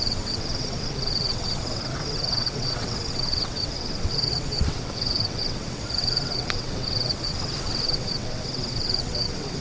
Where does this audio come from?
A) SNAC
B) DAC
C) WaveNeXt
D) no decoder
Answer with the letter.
C